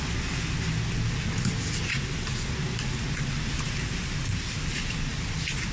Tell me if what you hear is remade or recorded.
recorded